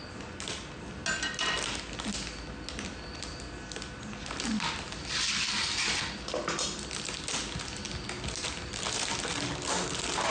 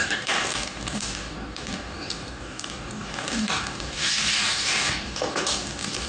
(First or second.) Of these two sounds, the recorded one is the first